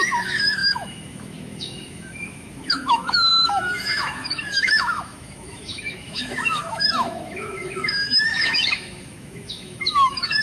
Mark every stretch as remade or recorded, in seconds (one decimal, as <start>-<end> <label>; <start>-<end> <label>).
0.0-10.4 remade